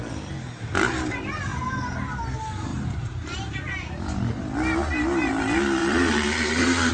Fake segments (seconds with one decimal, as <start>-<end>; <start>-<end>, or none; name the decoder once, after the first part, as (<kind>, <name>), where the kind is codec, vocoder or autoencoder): 1.5-2.2 (vocoder, BigVGAN v2); 2.7-3.7; 5.8-6.9